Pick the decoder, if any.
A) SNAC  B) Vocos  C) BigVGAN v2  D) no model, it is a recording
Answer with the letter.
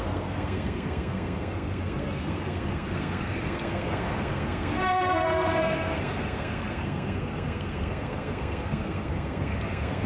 A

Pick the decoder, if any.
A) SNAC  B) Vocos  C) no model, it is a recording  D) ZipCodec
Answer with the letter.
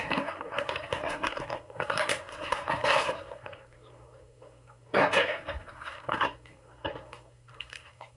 A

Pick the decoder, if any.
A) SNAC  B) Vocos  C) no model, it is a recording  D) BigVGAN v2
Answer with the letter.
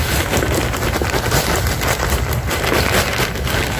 C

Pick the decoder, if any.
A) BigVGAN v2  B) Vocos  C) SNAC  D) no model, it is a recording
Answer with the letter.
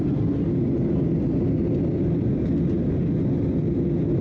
D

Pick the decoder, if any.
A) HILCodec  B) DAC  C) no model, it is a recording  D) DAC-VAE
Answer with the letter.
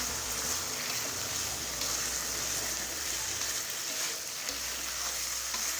C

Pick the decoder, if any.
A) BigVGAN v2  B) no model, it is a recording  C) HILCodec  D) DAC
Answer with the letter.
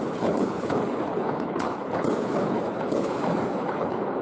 C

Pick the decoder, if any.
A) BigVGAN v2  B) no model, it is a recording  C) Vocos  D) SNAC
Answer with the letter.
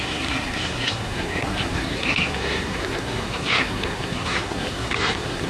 D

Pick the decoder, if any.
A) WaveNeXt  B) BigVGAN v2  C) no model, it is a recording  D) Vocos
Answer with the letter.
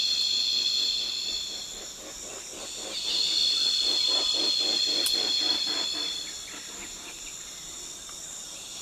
C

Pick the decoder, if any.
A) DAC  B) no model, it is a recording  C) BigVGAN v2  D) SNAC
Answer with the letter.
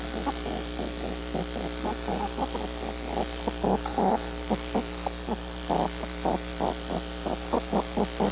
B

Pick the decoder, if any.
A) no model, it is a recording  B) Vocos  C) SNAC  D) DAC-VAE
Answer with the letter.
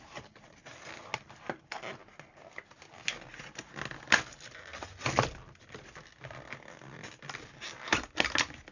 A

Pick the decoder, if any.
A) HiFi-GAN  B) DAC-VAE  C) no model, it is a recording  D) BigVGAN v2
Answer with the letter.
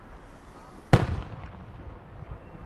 C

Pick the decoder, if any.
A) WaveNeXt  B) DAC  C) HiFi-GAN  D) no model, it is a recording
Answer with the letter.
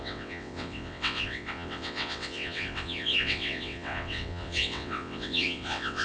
A